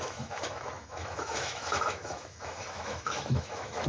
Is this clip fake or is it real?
fake